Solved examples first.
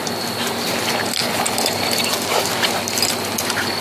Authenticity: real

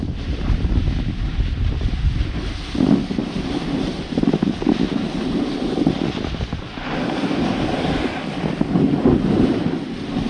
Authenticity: real